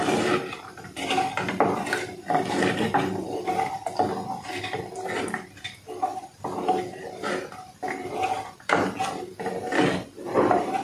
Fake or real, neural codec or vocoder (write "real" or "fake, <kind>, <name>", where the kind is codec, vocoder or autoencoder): fake, vocoder, BigVGAN v2